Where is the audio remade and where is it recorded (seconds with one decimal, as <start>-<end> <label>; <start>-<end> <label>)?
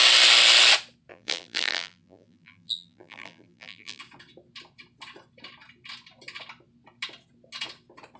0.0-1.1 recorded; 1.1-4.0 remade; 4.0-8.2 recorded